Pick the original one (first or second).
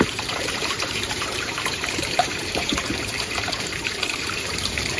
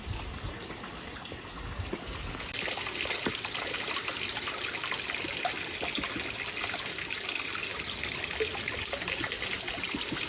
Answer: second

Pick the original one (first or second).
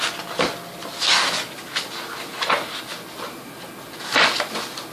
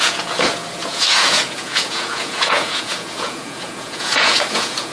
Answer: first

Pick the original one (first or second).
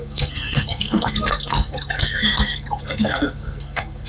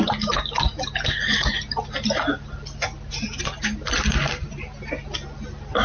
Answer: second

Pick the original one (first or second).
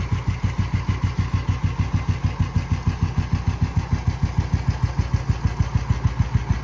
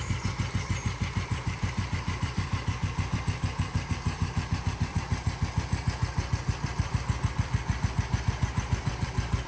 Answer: first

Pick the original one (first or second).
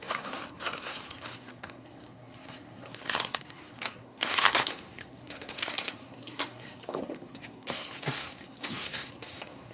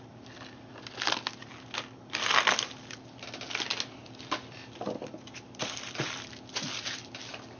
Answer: second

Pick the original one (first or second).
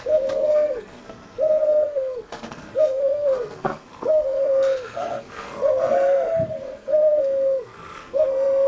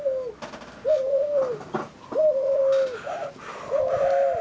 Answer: second